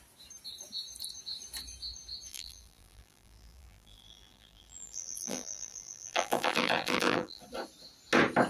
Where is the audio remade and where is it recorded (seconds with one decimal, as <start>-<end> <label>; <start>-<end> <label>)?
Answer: 0.0-2.3 recorded; 2.3-7.4 remade; 7.4-8.5 recorded